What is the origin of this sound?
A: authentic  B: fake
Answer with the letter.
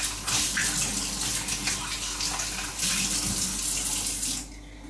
A